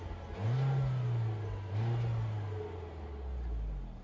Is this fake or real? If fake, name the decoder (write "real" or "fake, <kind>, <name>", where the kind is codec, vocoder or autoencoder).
real